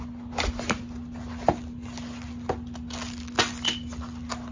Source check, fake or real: real